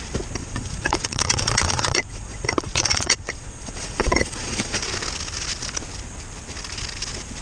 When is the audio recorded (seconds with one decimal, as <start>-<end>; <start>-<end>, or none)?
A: 0.0-0.4; 4.8-7.4